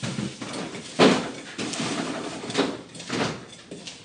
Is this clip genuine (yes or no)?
yes